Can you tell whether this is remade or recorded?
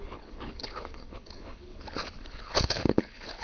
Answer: remade